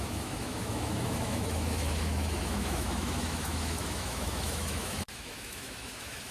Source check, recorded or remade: remade